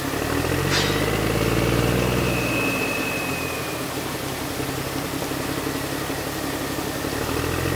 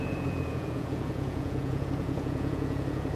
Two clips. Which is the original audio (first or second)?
first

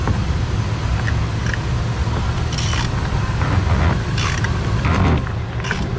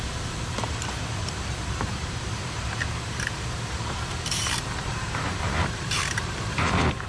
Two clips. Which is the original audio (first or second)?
first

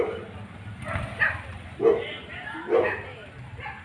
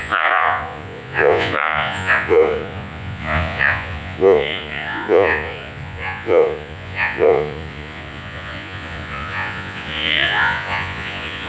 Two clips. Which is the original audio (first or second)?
first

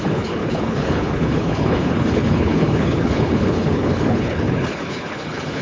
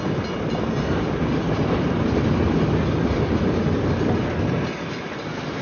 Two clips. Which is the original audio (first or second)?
second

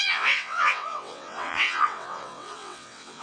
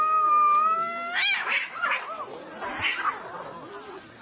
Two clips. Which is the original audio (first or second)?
second